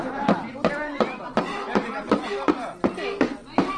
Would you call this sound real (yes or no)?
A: yes